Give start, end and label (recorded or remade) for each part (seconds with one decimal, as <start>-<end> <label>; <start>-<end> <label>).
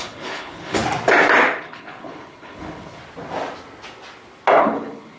0.0-0.8 remade; 0.8-1.6 recorded; 1.6-3.0 remade; 3.0-4.6 recorded; 4.6-5.2 remade